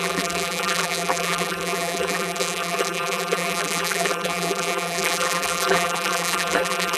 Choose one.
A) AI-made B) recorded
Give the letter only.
A